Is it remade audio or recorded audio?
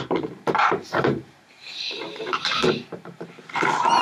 remade